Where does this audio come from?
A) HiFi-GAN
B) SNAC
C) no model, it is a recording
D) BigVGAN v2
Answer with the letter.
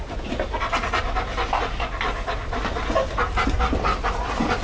C